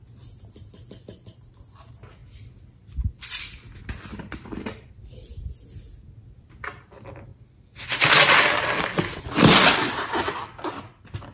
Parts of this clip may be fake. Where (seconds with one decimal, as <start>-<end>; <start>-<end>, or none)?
none